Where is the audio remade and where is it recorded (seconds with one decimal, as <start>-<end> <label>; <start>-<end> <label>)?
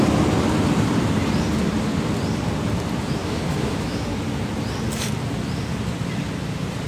0.0-3.2 recorded; 3.2-4.1 remade; 4.1-6.9 recorded